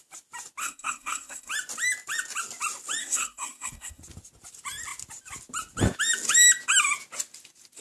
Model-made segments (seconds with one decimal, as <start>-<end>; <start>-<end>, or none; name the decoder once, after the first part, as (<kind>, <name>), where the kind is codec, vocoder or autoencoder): 0.6-1.5 (codec, SNAC); 3.0-4.0